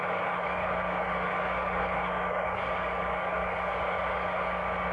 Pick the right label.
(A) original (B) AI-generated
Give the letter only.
B